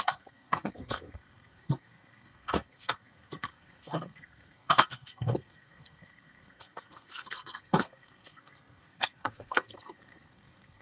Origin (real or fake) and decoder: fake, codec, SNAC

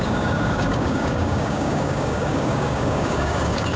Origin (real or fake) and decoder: fake, codec, DAC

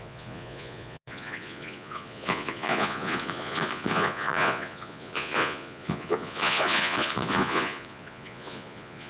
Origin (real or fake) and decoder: fake, vocoder, Vocos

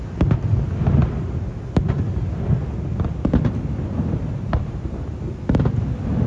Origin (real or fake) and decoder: real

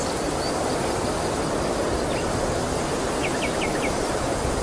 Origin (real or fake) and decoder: real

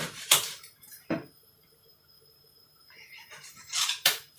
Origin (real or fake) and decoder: fake, vocoder, BigVGAN v2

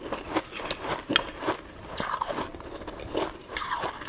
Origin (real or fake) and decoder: real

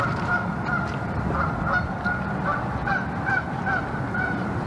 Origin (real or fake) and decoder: real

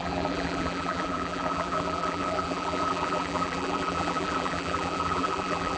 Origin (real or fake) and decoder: fake, vocoder, BigVGAN v2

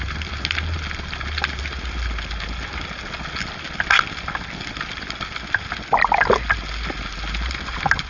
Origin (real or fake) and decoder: real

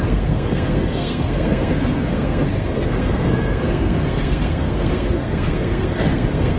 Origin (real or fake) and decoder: fake, codec, SNAC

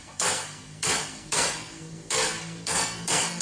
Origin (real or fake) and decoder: fake, codec, SNAC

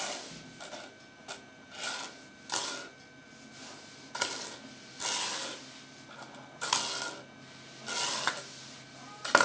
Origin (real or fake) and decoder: real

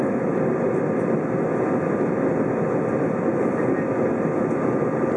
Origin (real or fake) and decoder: real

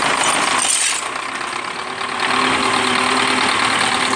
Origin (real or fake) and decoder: real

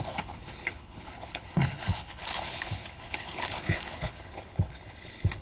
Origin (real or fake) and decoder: fake, codec, HILCodec